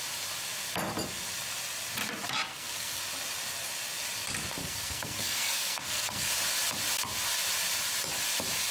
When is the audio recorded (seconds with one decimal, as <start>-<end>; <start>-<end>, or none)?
0.0-2.5; 3.0-4.6; 6.3-8.7